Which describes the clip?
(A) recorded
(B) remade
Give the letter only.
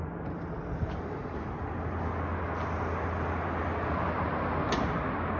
A